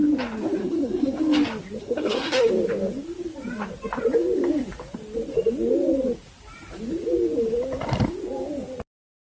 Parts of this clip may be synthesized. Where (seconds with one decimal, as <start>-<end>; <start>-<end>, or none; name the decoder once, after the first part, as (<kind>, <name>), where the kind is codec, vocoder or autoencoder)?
0.6-1.2 (codec, SNAC); 1.8-2.5